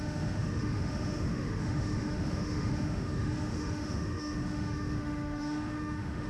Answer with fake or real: fake